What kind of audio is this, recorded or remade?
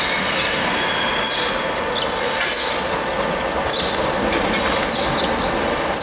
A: recorded